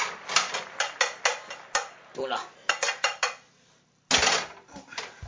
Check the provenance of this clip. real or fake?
real